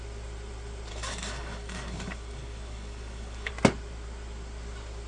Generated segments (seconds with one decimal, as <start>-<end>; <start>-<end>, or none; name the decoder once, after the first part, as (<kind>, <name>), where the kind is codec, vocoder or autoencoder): 0.9-3.5 (codec, DAC)